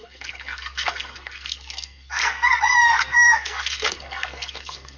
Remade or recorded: remade